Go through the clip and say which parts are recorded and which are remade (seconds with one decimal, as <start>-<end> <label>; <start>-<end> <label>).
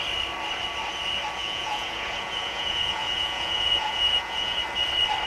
0.0-1.4 recorded; 1.4-4.6 remade; 4.6-5.3 recorded